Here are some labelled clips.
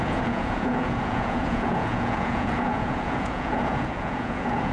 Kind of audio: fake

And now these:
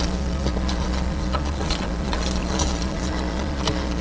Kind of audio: fake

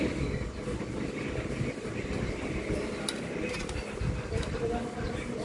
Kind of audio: real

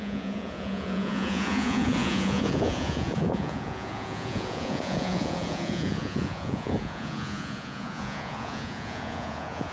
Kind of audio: fake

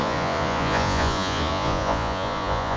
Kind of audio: fake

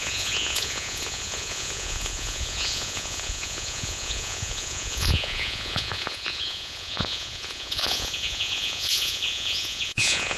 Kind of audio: fake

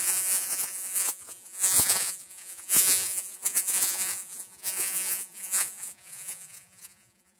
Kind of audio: fake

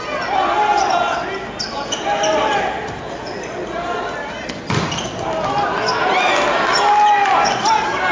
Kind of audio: real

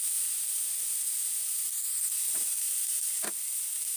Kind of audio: real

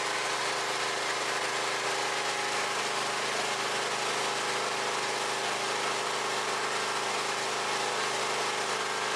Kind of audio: real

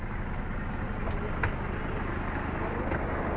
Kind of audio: real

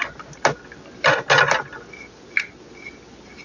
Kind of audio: real